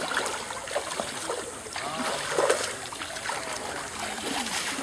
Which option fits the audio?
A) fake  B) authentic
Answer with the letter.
B